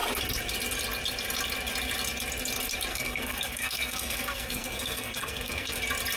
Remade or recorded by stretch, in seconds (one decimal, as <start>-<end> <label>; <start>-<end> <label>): 0.0-2.9 recorded; 2.9-5.8 remade; 5.8-6.2 recorded